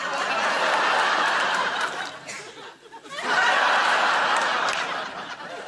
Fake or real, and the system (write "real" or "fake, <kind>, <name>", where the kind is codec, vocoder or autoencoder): real